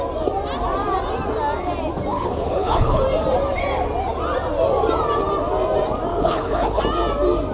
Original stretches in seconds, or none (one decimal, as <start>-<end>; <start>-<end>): 0.0-2.1; 3.0-6.1; 6.8-7.5